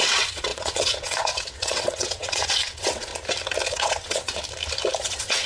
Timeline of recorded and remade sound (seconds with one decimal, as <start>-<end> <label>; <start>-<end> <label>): 0.0-3.1 remade; 3.1-3.7 recorded; 3.7-4.4 remade; 4.4-5.0 recorded; 5.0-5.5 remade